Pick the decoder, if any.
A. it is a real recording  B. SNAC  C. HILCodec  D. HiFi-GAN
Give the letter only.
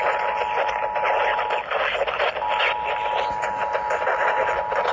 A